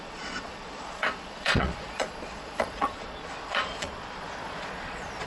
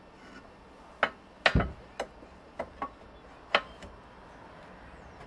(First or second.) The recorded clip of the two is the second